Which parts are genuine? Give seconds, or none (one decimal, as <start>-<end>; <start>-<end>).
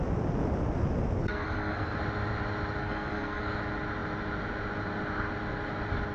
0.0-1.2; 2.0-2.8; 3.4-6.1